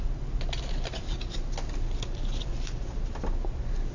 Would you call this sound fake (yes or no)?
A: no